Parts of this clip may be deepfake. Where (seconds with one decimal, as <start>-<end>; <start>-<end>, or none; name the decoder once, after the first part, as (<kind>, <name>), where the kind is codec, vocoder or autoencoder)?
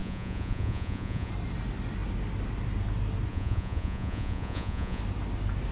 0.0-1.3 (vocoder, Vocos); 3.3-5.0